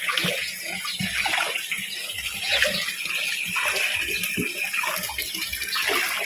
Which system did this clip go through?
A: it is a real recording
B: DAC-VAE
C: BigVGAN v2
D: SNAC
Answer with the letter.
A